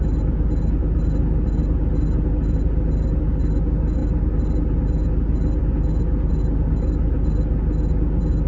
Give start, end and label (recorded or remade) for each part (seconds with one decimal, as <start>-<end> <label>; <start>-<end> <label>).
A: 0.0-8.5 recorded